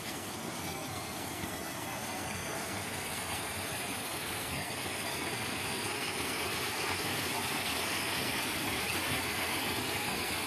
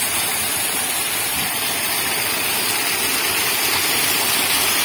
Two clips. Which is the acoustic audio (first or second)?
second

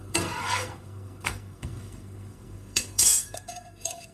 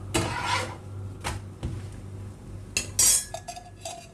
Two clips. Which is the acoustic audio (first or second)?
second